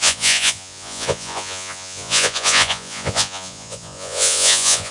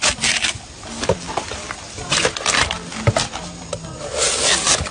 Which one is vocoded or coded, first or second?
first